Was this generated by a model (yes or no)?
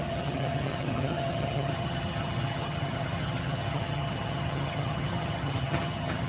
yes